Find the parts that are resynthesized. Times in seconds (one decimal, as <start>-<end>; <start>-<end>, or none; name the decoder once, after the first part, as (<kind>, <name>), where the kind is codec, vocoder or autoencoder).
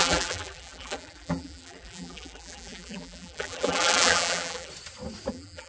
0.0-4.7 (vocoder, BigVGAN v2); 5.3-5.7